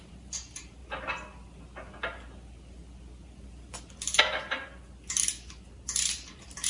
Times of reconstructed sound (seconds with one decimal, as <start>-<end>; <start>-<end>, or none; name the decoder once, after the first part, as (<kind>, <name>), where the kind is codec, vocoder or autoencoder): 0.0-0.8 (vocoder, BigVGAN v2); 4.2-4.7; 6.3-6.7

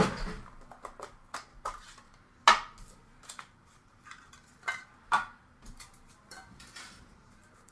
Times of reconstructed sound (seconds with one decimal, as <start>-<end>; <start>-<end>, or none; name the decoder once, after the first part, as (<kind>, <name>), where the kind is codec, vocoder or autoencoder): 1.5-2.4 (vocoder, BigVGAN v2); 3.0-7.7

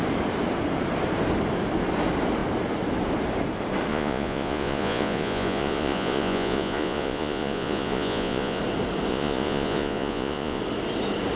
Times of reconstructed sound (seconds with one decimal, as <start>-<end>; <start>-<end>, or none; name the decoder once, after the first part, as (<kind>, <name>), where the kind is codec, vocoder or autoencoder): 3.9-8.6 (vocoder, Vocos); 9.1-10.6